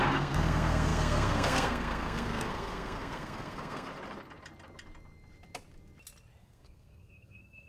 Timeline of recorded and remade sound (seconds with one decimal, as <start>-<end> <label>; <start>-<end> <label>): 0.0-3.9 remade; 3.9-6.4 recorded; 6.4-7.7 remade